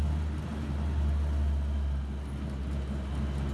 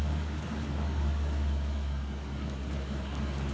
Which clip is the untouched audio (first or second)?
first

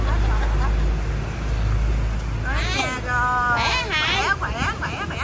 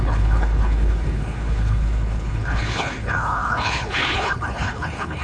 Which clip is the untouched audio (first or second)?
first